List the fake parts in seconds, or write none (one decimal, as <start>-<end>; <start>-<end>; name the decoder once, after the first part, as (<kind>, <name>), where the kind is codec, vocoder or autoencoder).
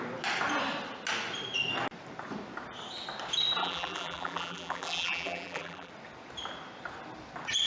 3.6-5.9 (vocoder, BigVGAN v2)